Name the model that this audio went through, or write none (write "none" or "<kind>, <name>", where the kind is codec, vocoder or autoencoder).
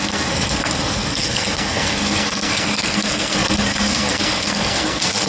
codec, SNAC